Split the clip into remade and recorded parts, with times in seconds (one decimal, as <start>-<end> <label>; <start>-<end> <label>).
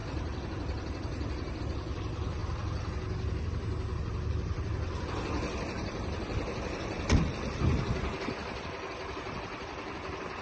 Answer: 0.0-2.4 remade; 2.4-4.2 recorded; 4.2-10.4 remade